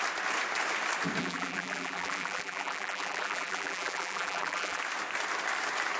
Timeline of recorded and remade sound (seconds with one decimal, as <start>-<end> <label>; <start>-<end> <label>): 0.0-1.2 recorded; 1.2-4.8 remade; 4.8-6.0 recorded